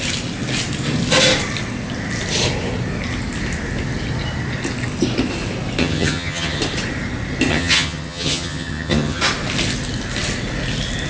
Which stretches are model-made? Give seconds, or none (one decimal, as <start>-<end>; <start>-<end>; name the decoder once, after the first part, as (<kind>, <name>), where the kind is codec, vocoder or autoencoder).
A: 5.8-6.6 (vocoder, HiFi-GAN); 7.5-9.2